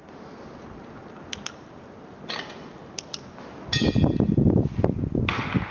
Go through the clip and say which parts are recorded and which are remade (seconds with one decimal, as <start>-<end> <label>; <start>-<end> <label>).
0.0-5.7 recorded